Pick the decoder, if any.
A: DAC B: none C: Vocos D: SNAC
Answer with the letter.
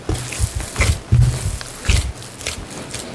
B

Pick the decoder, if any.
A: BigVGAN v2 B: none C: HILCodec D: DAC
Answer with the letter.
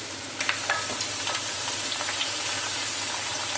A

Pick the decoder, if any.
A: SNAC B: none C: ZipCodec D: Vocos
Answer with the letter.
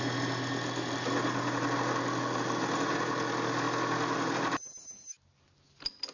B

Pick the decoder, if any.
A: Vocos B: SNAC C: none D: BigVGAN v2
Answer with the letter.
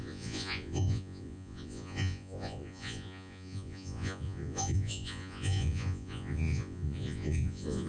A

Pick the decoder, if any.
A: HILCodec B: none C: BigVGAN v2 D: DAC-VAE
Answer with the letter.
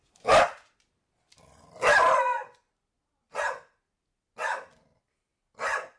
B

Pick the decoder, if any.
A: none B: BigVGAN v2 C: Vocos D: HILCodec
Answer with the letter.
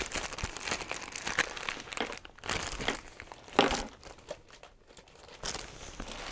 A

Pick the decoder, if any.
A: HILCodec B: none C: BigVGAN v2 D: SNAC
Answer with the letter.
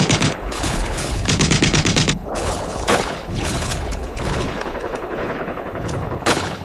A